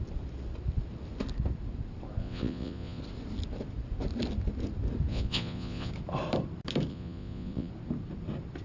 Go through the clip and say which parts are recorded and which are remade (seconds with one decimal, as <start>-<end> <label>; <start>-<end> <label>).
0.0-2.2 recorded; 2.2-3.0 remade; 3.0-5.1 recorded; 5.1-5.9 remade; 5.9-6.9 recorded; 6.9-7.7 remade; 7.7-8.6 recorded